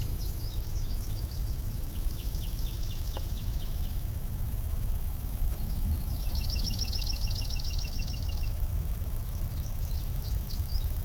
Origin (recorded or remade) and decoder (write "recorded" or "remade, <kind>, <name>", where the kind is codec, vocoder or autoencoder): remade, autoencoder, DAC-VAE